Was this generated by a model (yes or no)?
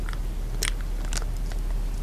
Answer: no